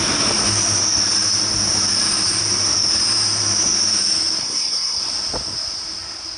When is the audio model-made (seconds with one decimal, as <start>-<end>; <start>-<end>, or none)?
4.4-5.0